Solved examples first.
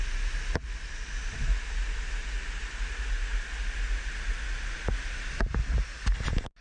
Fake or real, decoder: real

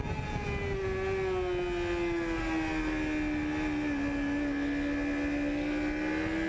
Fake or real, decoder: real